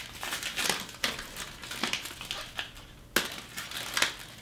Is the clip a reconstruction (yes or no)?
no